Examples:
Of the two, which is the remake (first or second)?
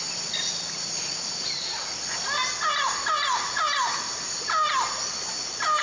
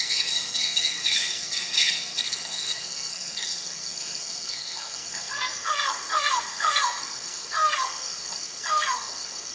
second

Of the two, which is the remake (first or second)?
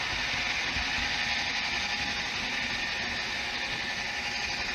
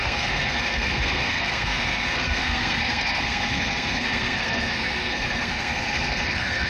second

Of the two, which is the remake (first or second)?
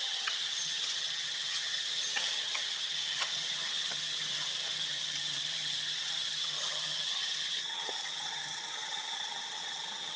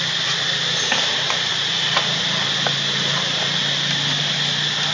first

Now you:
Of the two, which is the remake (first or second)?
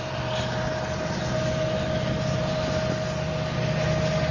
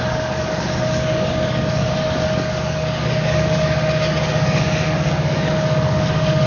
second